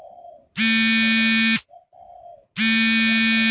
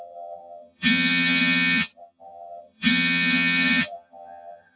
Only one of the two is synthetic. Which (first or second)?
second